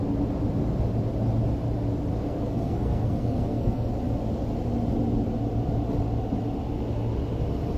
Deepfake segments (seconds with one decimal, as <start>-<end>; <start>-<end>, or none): 2.1-3.9